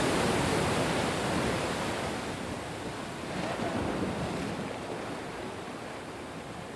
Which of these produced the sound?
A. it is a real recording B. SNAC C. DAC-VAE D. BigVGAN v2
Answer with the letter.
A